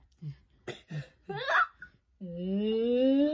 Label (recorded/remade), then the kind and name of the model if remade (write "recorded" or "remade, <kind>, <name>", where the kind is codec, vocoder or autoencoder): recorded